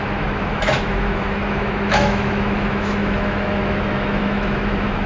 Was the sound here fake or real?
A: fake